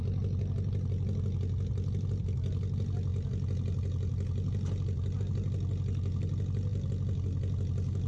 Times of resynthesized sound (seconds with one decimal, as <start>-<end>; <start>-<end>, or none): none